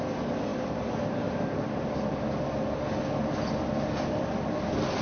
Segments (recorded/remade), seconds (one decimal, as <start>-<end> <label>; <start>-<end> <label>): 0.0-5.0 recorded